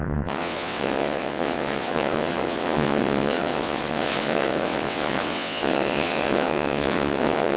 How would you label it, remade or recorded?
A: remade